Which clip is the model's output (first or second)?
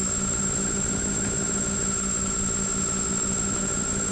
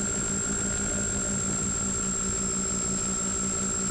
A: first